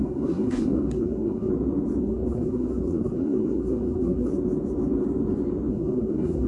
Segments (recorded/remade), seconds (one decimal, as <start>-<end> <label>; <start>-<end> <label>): 0.0-1.5 remade; 1.5-2.0 recorded; 2.0-4.3 remade; 4.3-5.7 recorded; 5.7-6.5 remade